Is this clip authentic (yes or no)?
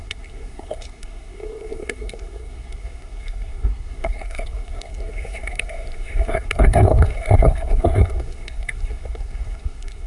no